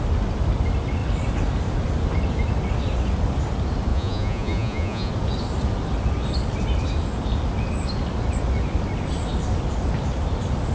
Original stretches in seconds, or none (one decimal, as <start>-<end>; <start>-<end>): 0.0-3.9; 5.1-10.7